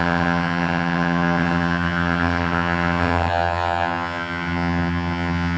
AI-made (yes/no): yes